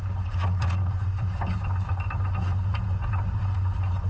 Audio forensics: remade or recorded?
recorded